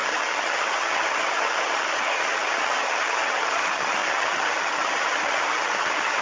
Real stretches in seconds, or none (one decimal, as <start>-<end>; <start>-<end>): none